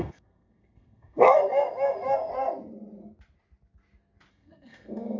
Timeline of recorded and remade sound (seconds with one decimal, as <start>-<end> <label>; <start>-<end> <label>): 0.0-2.3 remade; 2.3-4.3 recorded; 4.3-5.2 remade